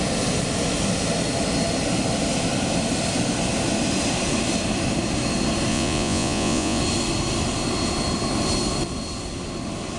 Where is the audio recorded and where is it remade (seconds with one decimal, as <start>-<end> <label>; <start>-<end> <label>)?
0.0-5.7 recorded; 5.7-6.8 remade; 6.8-10.0 recorded